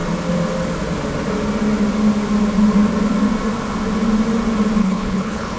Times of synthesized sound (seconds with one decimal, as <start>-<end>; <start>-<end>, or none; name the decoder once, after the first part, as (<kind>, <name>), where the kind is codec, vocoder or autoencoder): 4.8-5.6 (codec, HILCodec)